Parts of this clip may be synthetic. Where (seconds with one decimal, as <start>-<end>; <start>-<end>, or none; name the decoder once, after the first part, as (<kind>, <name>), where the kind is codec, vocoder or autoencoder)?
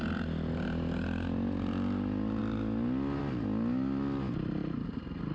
none